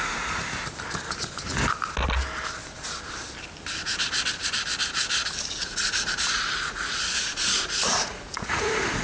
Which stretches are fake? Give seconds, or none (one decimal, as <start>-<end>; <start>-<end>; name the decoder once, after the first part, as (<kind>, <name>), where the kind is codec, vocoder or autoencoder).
0.0-0.4 (vocoder, Vocos); 5.5-9.0

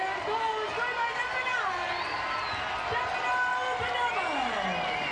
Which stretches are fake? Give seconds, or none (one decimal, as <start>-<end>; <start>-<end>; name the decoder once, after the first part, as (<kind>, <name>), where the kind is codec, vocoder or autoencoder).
none

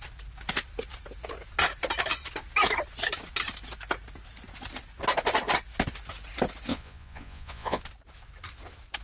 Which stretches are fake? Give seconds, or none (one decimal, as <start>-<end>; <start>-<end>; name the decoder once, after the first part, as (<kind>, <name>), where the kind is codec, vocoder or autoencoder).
6.7-7.8 (vocoder, Vocos)